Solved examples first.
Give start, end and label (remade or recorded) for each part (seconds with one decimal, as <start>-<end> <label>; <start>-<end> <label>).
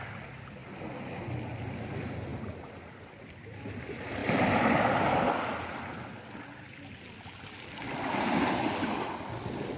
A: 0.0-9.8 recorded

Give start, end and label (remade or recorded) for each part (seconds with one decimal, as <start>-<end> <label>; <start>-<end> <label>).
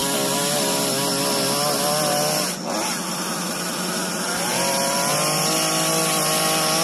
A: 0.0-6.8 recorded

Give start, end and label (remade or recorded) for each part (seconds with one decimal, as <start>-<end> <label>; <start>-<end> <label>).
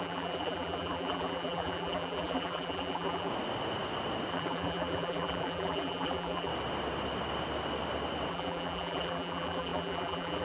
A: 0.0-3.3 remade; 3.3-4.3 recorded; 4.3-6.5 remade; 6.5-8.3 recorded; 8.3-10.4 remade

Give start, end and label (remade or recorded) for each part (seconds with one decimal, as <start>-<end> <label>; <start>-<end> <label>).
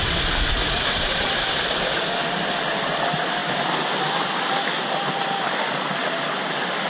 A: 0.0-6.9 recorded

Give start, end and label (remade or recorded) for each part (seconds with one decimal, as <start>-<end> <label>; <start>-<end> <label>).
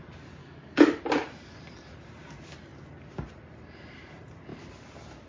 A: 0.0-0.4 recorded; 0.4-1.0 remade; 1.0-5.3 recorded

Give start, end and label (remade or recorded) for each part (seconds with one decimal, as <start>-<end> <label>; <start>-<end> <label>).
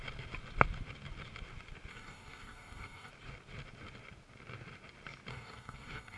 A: 0.0-1.9 recorded; 1.9-3.1 remade; 3.1-5.3 recorded; 5.3-6.2 remade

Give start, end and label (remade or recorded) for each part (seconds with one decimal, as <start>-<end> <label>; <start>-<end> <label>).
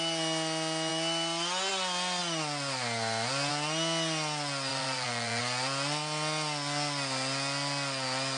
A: 0.0-4.7 recorded; 4.7-5.4 remade; 5.4-8.4 recorded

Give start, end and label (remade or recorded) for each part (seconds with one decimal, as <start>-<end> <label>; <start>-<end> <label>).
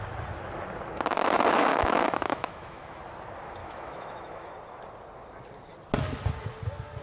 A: 0.0-1.7 recorded; 1.7-3.0 remade; 3.0-3.6 recorded; 3.6-4.5 remade; 4.5-7.0 recorded